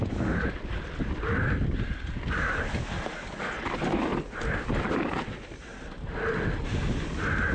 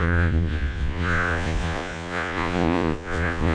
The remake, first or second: second